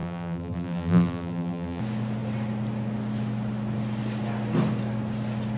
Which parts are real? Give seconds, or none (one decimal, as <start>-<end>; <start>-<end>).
1.8-5.6